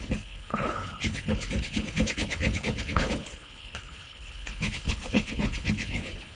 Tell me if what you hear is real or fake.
fake